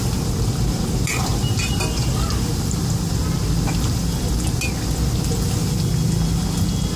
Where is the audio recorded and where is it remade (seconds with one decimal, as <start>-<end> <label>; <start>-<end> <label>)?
0.0-7.0 recorded

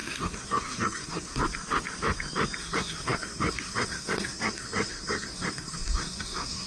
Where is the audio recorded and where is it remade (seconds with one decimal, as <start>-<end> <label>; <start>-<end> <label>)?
0.0-1.4 remade; 1.4-2.6 recorded; 2.6-6.7 remade

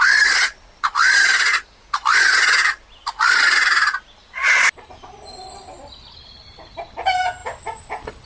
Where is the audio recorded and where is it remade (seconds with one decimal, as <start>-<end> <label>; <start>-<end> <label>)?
0.0-7.4 recorded; 7.4-8.3 remade

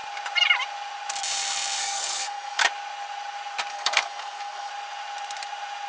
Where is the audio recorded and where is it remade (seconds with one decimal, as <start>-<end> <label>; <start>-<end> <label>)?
0.0-1.8 recorded; 1.8-2.6 remade; 2.6-3.7 recorded; 3.7-4.7 remade; 4.7-5.9 recorded